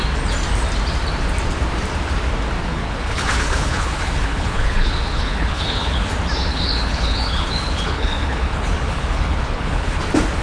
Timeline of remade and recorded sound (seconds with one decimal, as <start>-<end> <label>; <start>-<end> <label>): 0.0-2.7 recorded; 2.7-6.1 remade; 6.1-6.5 recorded; 6.5-10.0 remade; 10.0-10.4 recorded

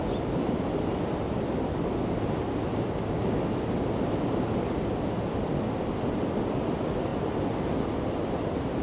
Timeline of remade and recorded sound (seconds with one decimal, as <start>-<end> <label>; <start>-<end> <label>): 0.0-8.8 recorded

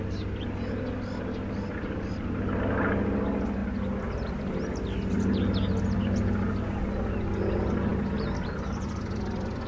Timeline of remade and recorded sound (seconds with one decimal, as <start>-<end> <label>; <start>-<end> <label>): 0.0-3.6 recorded; 3.6-4.5 remade; 4.5-7.9 recorded; 7.9-9.7 remade

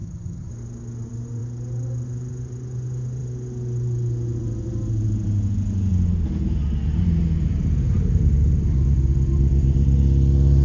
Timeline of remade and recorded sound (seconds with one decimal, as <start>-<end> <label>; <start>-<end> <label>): 0.0-0.5 remade; 0.5-10.6 recorded

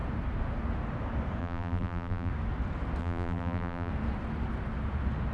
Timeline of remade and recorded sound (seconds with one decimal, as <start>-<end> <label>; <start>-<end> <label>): 0.0-1.4 recorded; 1.4-2.3 remade; 2.3-3.0 recorded; 3.0-3.9 remade; 3.9-5.3 recorded

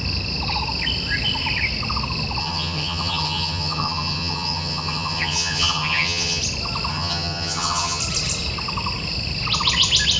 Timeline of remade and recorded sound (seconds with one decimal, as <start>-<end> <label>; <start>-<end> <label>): 0.0-2.4 recorded; 2.4-6.4 remade; 6.4-6.9 recorded; 6.9-8.0 remade; 8.0-10.2 recorded